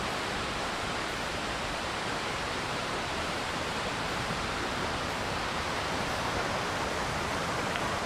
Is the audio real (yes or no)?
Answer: no